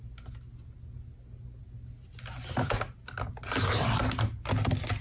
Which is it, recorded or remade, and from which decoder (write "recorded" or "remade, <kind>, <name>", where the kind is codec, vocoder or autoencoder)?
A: recorded